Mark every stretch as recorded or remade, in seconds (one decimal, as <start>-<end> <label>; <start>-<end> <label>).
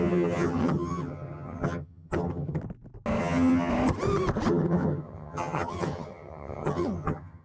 0.0-2.6 remade; 2.6-3.2 recorded; 3.2-3.7 remade; 3.7-4.5 recorded; 4.5-7.4 remade